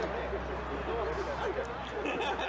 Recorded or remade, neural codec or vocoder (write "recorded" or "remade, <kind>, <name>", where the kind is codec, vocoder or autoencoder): recorded